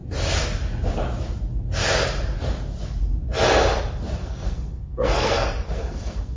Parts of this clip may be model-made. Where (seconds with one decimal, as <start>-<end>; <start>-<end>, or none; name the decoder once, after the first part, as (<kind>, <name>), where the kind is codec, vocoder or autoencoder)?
4.2-6.4 (codec, SNAC)